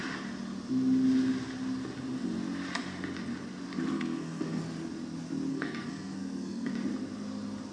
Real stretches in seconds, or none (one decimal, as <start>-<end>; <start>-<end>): 0.0-3.9; 4.6-5.5; 6.7-7.7